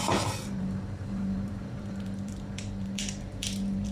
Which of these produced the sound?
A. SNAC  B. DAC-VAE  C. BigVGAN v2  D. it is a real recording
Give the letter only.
C